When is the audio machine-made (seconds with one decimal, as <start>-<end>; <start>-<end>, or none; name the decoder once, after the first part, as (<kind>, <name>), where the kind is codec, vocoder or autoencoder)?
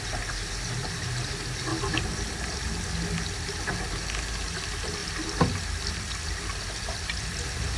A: none